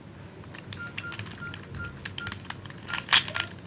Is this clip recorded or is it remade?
recorded